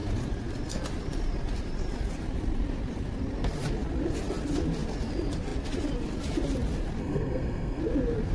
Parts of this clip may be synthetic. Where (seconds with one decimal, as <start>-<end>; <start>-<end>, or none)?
7.0-7.8